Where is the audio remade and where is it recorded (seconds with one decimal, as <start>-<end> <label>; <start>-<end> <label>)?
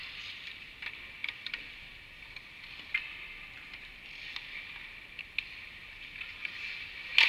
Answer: 0.0-0.6 remade; 0.6-1.2 recorded; 1.2-5.3 remade; 5.3-5.8 recorded; 5.8-6.5 remade; 6.5-7.3 recorded